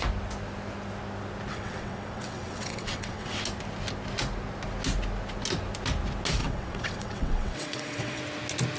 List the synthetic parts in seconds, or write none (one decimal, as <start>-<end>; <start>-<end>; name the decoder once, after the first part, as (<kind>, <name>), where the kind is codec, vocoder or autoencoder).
1.5-3.4 (vocoder, WaveNeXt); 6.4-8.2